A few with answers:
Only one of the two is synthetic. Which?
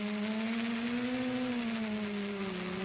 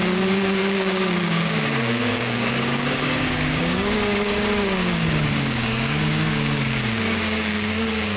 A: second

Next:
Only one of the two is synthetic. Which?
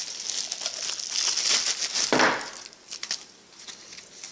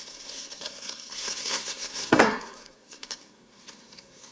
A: second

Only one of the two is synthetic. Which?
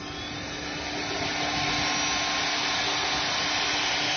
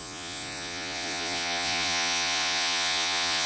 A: second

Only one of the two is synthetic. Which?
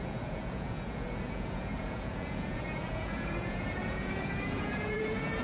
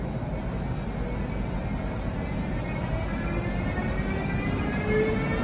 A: first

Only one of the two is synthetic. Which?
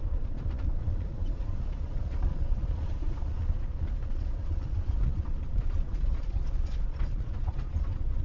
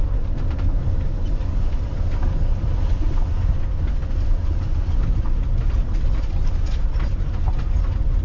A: first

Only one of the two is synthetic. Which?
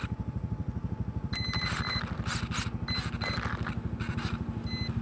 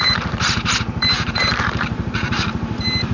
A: second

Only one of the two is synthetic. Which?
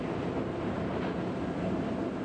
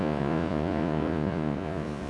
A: second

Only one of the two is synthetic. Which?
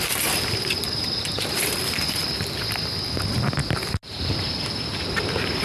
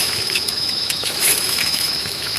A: second